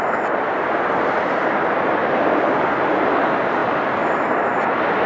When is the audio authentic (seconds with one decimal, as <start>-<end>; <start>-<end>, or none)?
0.0-2.0; 2.6-5.1